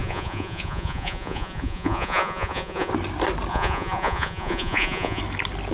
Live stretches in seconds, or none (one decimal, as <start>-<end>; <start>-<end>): 2.9-3.5; 5.2-5.7